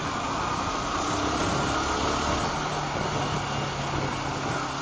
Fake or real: real